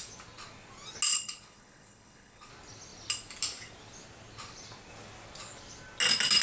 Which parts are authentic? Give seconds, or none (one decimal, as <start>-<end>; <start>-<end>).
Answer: 0.0-1.1; 2.5-6.4